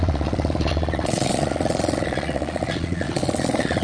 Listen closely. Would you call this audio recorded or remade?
remade